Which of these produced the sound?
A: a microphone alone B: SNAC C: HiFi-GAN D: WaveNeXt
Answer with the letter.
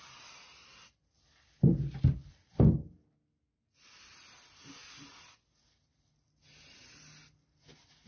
A